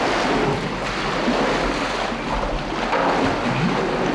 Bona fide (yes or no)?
yes